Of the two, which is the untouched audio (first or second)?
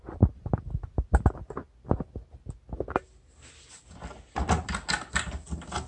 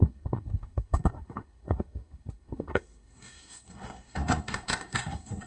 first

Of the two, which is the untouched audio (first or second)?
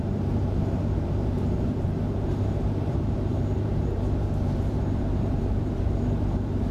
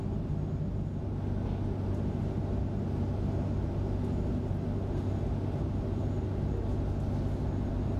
second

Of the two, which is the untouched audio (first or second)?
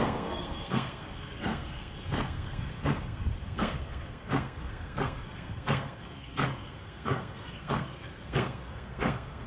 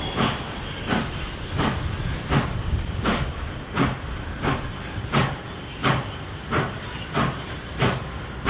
second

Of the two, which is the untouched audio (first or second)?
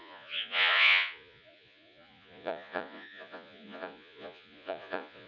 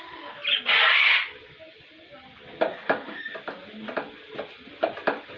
second